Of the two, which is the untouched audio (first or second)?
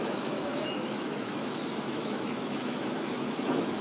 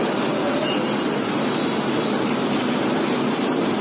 second